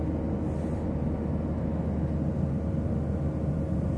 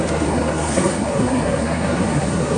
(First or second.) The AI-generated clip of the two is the second